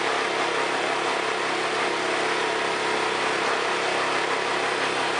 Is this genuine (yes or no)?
yes